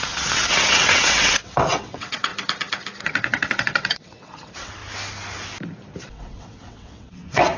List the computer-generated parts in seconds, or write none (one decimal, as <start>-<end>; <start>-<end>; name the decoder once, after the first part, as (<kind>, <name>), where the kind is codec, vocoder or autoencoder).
0.0-2.3 (vocoder, WaveNeXt); 3.0-4.8; 6.1-7.6